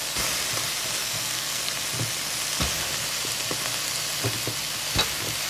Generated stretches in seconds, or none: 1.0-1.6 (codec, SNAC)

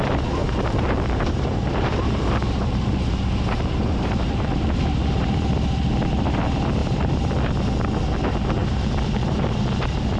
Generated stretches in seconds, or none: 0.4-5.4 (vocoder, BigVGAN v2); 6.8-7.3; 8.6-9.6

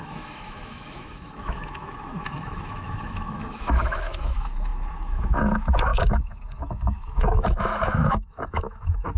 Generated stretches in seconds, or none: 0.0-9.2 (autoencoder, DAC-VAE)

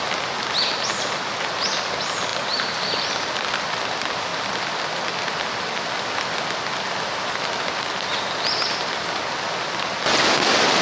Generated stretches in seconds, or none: none

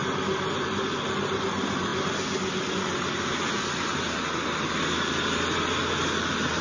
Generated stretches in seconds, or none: none

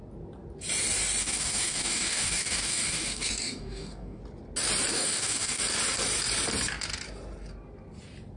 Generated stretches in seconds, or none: 1.2-4.2 (codec, DAC); 4.9-5.6